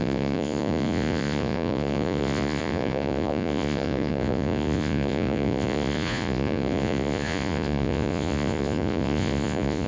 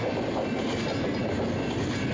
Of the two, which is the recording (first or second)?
second